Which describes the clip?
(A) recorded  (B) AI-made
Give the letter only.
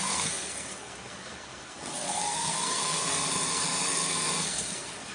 B